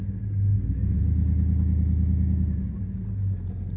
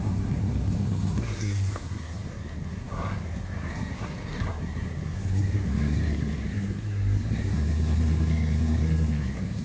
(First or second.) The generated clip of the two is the second